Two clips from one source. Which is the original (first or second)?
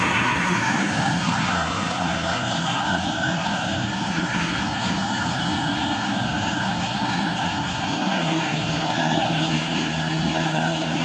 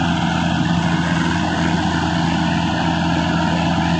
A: second